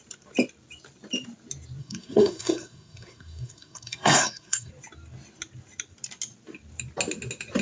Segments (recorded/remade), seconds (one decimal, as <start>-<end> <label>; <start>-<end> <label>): 0.0-1.8 recorded; 1.8-4.7 remade; 4.7-7.6 recorded